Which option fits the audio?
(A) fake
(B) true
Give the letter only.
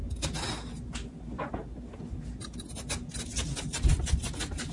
B